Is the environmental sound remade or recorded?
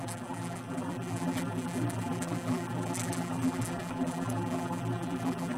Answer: remade